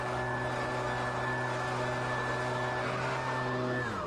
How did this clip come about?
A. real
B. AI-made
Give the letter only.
A